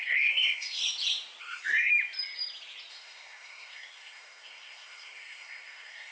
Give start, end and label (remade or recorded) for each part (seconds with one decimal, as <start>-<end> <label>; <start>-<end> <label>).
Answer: 0.0-0.8 remade; 0.8-1.4 recorded; 1.4-1.9 remade; 1.9-2.9 recorded; 2.9-6.1 remade